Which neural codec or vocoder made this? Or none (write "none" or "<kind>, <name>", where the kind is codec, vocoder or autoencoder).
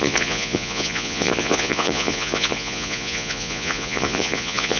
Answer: vocoder, Vocos